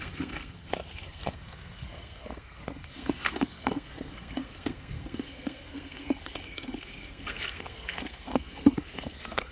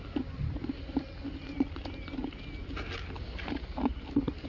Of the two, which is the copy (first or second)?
first